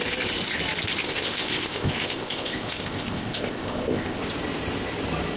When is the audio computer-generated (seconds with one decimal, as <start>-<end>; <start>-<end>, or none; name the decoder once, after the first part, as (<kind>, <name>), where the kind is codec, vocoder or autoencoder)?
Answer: 1.0-4.2 (codec, ZipCodec)